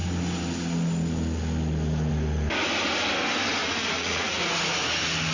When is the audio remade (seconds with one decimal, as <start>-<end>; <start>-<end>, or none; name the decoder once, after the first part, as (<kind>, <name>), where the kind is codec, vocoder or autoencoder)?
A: 3.6-4.4 (vocoder, Vocos)